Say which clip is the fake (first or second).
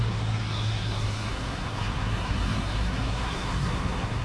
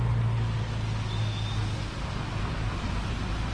first